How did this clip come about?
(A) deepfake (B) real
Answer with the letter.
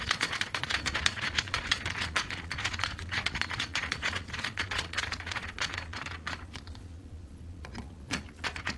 A